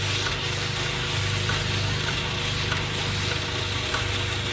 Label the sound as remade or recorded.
recorded